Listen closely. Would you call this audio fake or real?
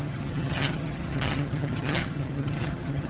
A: fake